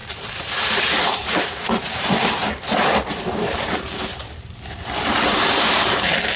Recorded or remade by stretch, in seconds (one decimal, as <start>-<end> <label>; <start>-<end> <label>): 0.0-6.4 remade